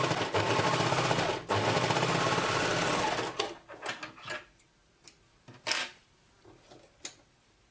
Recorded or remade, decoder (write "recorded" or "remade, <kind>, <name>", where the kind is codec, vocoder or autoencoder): recorded